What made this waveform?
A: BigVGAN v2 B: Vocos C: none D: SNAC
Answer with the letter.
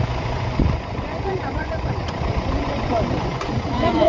B